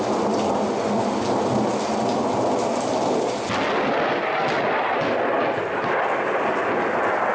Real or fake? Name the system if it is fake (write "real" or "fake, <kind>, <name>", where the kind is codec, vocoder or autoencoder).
real